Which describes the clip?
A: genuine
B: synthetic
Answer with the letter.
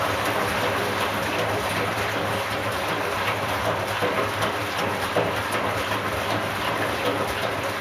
A